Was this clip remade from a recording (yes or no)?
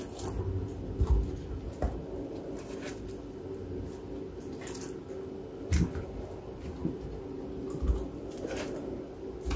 no